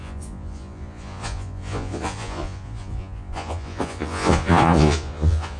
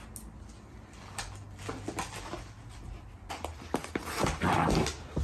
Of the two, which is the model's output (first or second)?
first